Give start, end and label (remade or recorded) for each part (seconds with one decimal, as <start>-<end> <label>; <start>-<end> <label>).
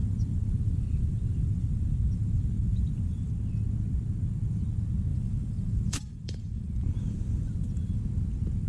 0.0-3.3 remade; 3.3-5.1 recorded; 5.1-8.0 remade; 8.0-8.7 recorded